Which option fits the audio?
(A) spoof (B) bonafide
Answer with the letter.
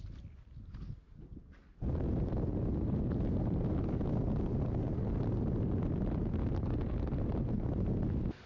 B